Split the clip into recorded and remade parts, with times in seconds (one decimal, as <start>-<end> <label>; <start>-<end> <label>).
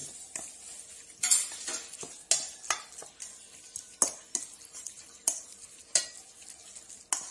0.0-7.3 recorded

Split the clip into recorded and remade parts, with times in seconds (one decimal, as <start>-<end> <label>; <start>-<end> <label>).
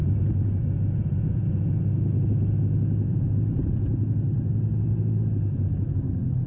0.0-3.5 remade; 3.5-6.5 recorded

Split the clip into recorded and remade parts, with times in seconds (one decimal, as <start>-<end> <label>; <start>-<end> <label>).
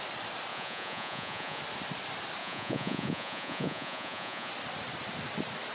0.0-0.5 recorded; 0.5-1.6 remade; 1.6-2.4 recorded; 2.4-4.5 remade; 4.5-5.7 recorded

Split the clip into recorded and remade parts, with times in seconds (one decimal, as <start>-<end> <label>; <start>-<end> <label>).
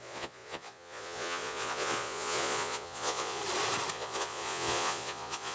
0.0-3.4 remade; 3.4-3.9 recorded; 3.9-5.5 remade